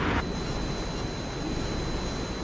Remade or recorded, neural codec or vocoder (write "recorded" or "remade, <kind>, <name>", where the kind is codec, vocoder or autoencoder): recorded